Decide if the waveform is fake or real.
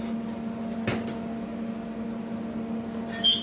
real